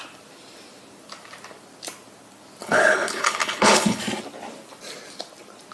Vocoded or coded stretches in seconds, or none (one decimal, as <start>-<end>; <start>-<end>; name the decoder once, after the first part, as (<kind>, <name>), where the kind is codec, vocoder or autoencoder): 2.6-4.0 (codec, HILCodec)